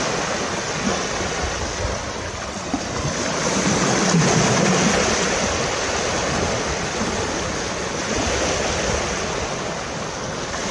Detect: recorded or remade recorded